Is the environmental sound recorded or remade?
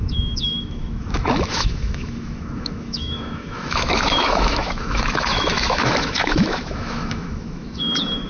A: remade